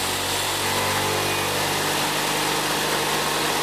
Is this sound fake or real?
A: real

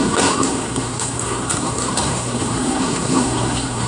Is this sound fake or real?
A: fake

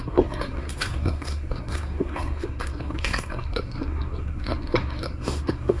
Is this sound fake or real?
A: fake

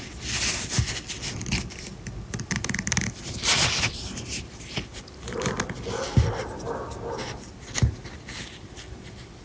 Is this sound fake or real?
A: real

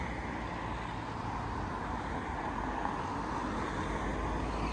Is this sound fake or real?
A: real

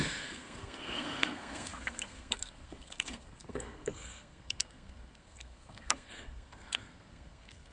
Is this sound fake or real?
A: fake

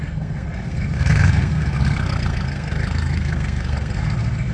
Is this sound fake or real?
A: fake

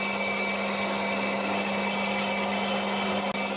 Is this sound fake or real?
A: real